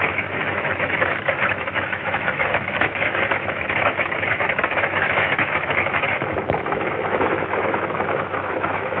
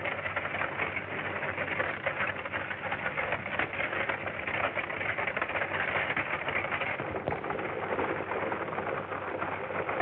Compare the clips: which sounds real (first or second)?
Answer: second